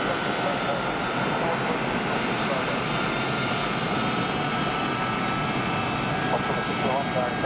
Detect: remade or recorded recorded